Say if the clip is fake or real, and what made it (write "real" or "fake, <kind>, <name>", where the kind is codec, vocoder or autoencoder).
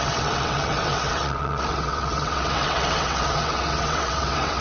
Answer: fake, vocoder, WaveNeXt